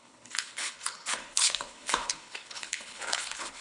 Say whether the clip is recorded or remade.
remade